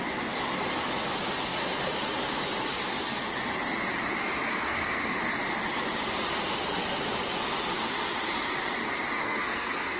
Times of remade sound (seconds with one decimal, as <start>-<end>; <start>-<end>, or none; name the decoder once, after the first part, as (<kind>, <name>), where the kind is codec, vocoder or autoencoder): 4.5-5.2 (codec, SNAC); 9.2-10.0